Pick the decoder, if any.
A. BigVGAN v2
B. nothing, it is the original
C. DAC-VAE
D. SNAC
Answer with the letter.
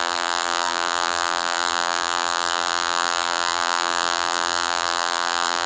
A